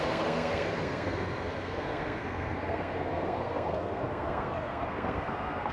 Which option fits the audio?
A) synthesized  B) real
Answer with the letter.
A